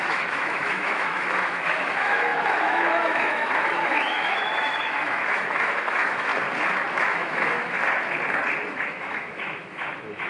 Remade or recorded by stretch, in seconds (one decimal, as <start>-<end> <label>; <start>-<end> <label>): 0.0-6.3 remade; 6.3-6.9 recorded; 6.9-7.8 remade; 7.8-8.7 recorded; 8.7-10.3 remade